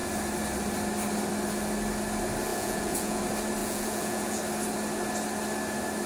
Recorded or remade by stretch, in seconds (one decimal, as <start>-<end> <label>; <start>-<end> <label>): 0.0-2.5 recorded; 2.5-3.2 remade; 3.2-3.6 recorded; 3.6-4.4 remade; 4.4-6.1 recorded